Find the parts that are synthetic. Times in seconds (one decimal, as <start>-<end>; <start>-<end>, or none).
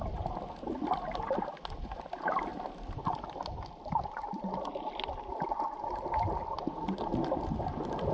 none